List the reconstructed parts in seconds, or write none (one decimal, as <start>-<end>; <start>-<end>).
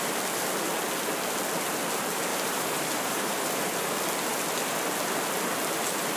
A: 2.3-3.3